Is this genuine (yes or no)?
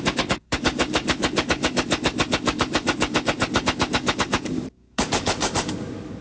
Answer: no